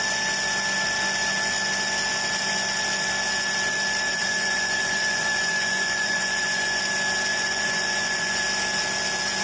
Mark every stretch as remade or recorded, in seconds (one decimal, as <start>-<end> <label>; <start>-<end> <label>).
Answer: 0.0-4.1 recorded; 4.1-6.8 remade; 6.8-7.3 recorded; 7.3-8.4 remade; 8.4-9.4 recorded